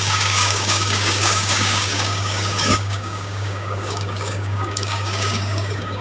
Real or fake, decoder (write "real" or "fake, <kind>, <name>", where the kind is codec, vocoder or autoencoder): fake, codec, DAC